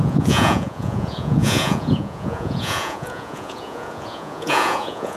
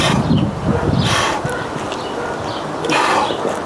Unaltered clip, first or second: second